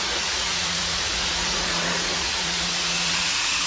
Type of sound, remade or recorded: remade